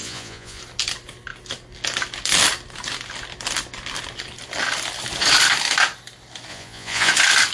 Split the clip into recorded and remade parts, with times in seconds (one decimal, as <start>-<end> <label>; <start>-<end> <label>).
0.0-0.6 remade; 0.6-6.5 recorded; 6.5-7.1 remade; 7.1-7.5 recorded